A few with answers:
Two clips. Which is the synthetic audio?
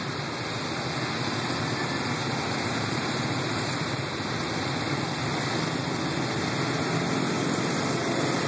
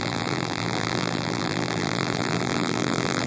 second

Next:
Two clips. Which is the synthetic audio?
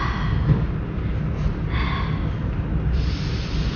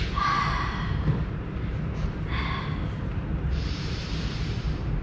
second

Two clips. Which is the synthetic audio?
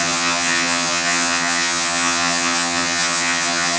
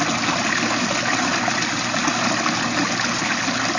first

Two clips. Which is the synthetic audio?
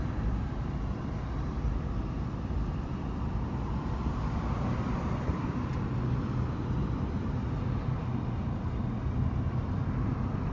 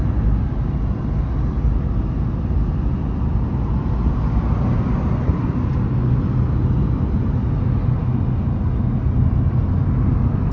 first